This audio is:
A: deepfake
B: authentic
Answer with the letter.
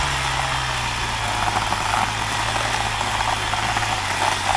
B